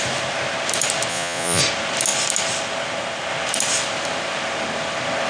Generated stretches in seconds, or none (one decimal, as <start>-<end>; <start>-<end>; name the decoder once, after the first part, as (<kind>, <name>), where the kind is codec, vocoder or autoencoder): 1.1-1.6 (vocoder, Vocos)